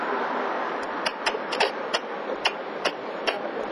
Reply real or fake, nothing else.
real